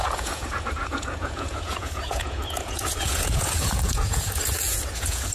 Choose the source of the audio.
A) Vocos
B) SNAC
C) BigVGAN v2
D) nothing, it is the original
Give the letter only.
A